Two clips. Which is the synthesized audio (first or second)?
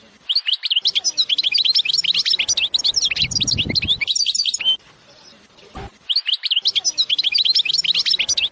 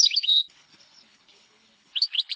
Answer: second